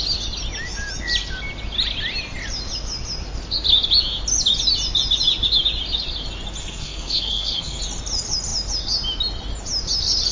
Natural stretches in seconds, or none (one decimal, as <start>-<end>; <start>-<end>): 0.0-6.6; 7.8-10.3